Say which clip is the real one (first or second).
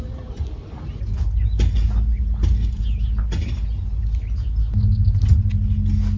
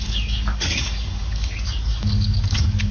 first